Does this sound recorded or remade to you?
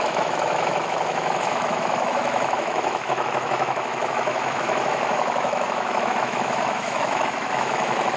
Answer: remade